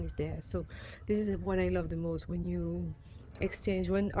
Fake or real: fake